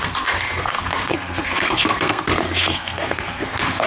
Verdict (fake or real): fake